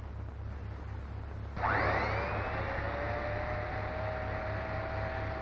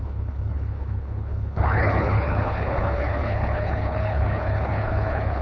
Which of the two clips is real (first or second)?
first